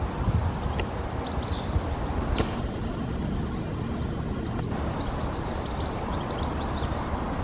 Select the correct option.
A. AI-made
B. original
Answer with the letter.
B